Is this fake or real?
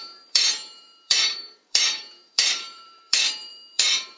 fake